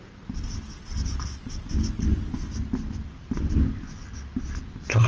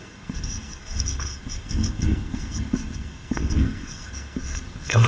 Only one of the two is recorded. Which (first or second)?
first